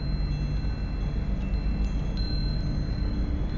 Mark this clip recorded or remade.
recorded